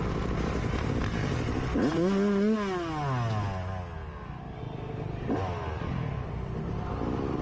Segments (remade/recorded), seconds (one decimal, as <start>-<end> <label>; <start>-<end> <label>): 0.0-7.4 recorded